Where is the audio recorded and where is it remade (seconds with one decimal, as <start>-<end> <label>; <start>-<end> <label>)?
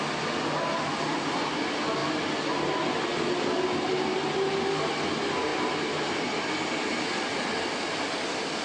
0.0-8.6 recorded